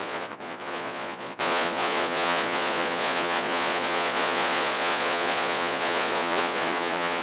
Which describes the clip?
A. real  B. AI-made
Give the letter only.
B